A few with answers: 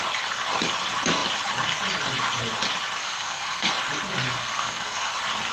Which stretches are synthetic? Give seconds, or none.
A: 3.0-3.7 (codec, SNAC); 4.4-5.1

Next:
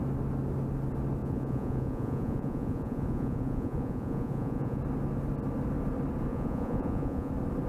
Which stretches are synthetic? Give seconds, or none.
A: 1.2-4.8 (vocoder, Vocos); 6.3-7.3

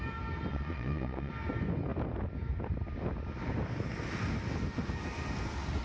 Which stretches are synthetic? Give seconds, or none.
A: 0.5-1.3 (vocoder, Vocos)

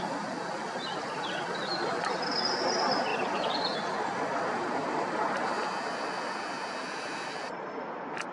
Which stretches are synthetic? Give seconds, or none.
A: 4.8-5.3 (vocoder, BigVGAN v2)

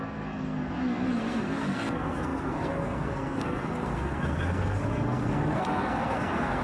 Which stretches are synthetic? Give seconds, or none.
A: 0.0-6.6 (codec, SNAC)

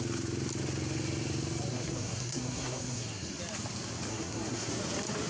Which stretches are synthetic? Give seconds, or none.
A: 1.7-3.4 (codec, SNAC); 4.1-4.7

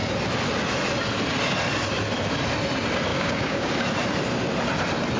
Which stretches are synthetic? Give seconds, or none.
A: 3.1-3.7 (codec, DAC)